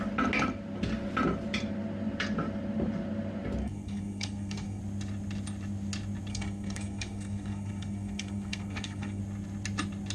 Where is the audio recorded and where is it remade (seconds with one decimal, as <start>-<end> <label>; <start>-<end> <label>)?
0.0-3.6 recorded; 3.6-4.8 remade; 4.8-6.3 recorded; 6.3-9.2 remade; 9.2-10.1 recorded